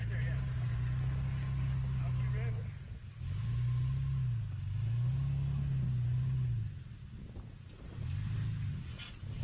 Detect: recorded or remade recorded